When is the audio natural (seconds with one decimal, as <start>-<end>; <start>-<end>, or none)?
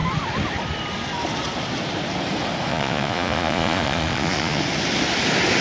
0.0-2.7; 4.6-5.6